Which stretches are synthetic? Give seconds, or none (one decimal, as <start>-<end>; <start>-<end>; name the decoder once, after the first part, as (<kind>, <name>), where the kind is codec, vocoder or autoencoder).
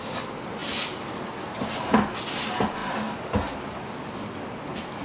none